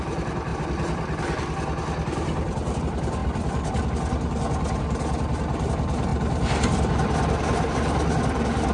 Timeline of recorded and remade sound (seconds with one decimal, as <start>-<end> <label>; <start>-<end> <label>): 0.0-3.2 recorded; 3.2-3.9 remade; 3.9-8.7 recorded